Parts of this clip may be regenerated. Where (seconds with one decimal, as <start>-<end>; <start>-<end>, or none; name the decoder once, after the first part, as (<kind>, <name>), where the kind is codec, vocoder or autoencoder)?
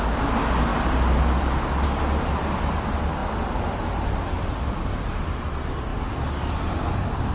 none